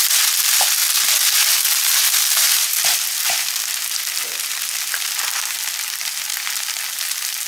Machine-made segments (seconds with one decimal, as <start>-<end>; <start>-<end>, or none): 0.0-4.7; 5.8-6.3; 6.9-7.5